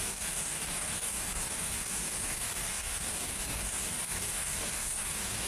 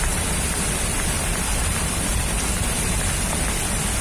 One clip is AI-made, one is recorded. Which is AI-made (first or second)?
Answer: first